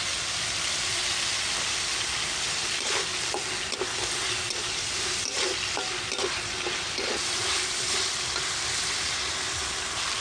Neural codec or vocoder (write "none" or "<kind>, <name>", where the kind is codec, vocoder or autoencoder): none